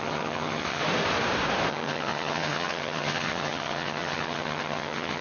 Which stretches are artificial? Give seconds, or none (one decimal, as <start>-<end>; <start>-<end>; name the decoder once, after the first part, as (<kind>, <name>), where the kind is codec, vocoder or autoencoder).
0.0-0.8 (vocoder, HiFi-GAN); 1.7-5.2